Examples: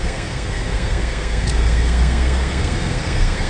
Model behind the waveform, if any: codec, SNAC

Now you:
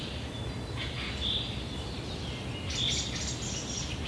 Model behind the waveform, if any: none